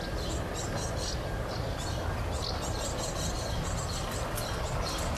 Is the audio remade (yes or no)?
no